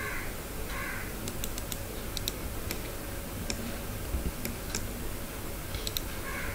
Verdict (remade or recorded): recorded